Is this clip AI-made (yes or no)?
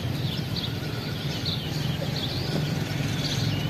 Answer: yes